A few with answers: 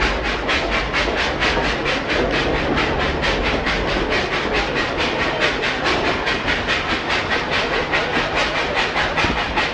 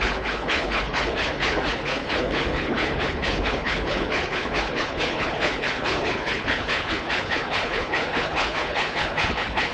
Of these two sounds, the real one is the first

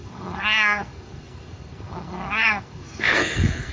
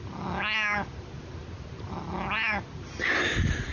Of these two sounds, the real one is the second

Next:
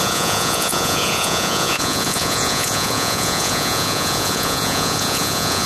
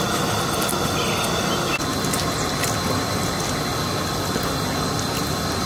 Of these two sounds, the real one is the second